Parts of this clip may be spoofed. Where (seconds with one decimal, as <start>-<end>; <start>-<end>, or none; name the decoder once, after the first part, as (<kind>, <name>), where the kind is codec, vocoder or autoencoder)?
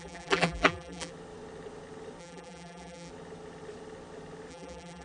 0.0-1.1 (vocoder, BigVGAN v2); 2.2-3.1; 4.5-5.0